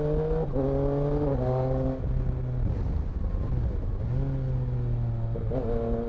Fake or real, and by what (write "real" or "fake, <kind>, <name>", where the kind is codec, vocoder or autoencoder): real